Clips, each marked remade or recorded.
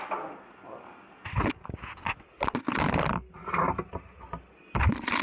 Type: recorded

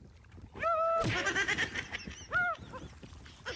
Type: recorded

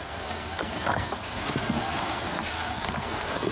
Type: remade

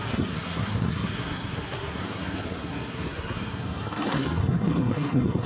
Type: remade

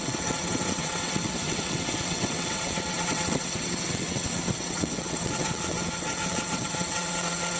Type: remade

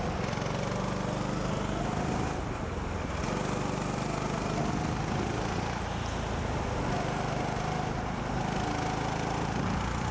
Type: recorded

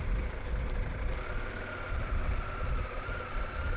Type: recorded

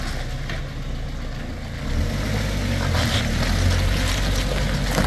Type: recorded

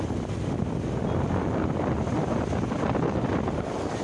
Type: recorded